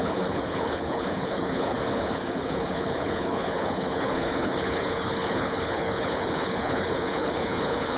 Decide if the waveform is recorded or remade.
remade